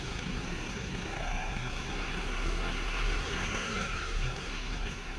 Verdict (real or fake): fake